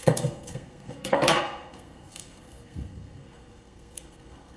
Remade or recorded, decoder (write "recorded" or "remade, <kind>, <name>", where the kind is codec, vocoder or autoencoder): remade, codec, SNAC